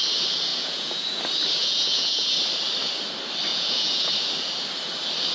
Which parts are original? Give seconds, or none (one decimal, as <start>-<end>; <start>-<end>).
0.0-0.5; 1.2-1.6; 2.3-3.5; 4.1-5.3